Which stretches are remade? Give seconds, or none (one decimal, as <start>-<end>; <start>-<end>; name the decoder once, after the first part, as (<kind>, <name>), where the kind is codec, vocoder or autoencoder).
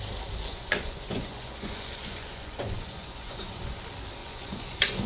0.5-3.6 (vocoder, Vocos); 4.2-5.1